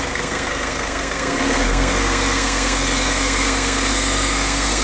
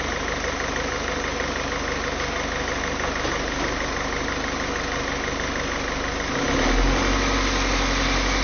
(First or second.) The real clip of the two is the second